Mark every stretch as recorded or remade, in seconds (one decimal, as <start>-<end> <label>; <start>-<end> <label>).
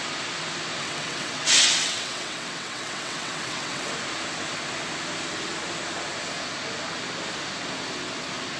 0.0-0.8 recorded; 0.8-3.9 remade; 3.9-8.6 recorded